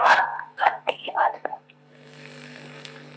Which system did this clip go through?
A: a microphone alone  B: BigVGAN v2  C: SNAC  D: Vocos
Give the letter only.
C